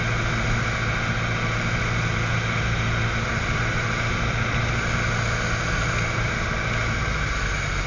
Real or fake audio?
real